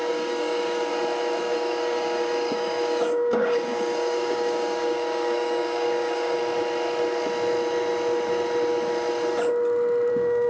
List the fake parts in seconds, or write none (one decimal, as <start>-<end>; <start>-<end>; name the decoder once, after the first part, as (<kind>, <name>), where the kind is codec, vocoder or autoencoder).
0.0-0.9 (codec, DAC); 1.4-6.4; 10.1-10.5